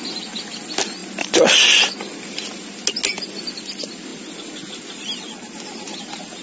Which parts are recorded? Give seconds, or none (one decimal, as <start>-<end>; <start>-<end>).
0.0-6.4